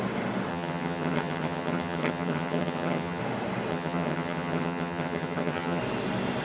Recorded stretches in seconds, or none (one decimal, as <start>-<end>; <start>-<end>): 0.0-0.5; 3.2-3.7; 5.8-6.4